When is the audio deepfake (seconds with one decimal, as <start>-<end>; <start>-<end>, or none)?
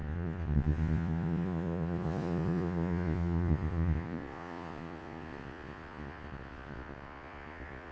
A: 0.0-7.9